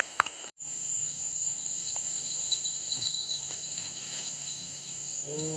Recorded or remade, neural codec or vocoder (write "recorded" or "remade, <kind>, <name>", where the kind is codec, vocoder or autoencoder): remade, codec, DAC